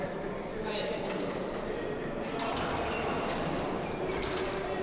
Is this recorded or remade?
recorded